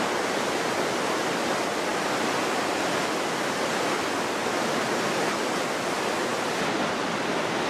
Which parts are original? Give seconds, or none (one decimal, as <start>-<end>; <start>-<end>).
0.0-7.7